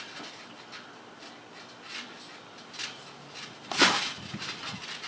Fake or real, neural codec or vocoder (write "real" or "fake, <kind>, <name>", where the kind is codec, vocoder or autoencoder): real